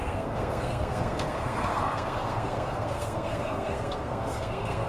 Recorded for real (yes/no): no